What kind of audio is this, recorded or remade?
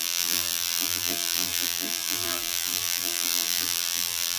remade